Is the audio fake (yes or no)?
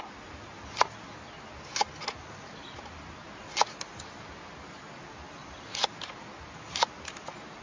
no